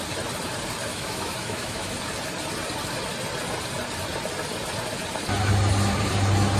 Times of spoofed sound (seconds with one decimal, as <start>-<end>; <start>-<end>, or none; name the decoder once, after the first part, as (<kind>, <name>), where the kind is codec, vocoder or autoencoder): 0.9-2.0 (autoencoder, DAC-VAE)

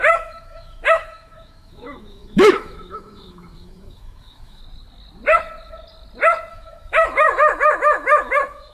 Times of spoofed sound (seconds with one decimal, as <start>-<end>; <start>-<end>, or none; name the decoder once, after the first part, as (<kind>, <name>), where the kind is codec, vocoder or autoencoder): 0.0-4.6 (autoencoder, DAC-VAE); 6.5-8.7